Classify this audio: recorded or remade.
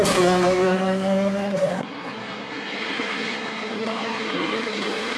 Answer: remade